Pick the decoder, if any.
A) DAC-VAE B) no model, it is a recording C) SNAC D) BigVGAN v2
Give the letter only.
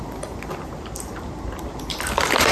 B